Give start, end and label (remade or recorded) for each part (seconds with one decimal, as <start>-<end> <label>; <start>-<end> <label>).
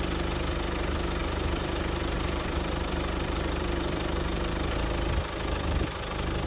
0.0-1.2 recorded; 1.2-4.5 remade; 4.5-6.5 recorded